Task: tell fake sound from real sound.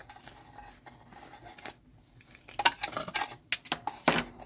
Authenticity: real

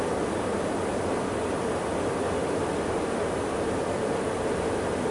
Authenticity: real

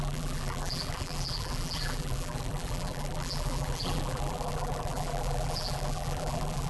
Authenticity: fake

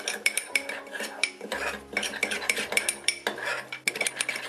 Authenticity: fake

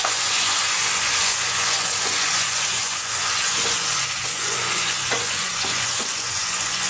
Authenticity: fake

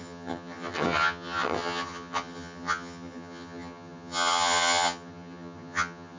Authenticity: fake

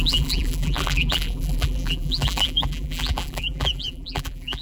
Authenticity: fake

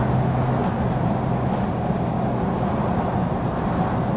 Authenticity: real